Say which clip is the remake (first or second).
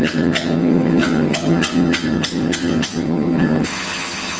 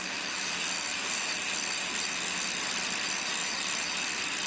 first